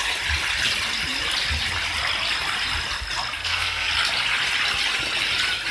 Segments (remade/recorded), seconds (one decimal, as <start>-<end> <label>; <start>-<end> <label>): 0.0-3.4 recorded; 3.4-3.9 remade; 3.9-5.7 recorded